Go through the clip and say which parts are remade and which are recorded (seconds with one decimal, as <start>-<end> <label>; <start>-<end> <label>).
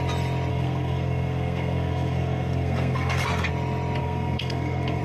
0.0-0.5 recorded; 0.5-3.5 remade; 3.5-4.0 recorded; 4.0-5.0 remade